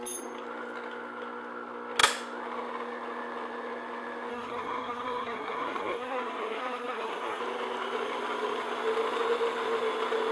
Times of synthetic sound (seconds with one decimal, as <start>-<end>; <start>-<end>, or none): 4.3-7.4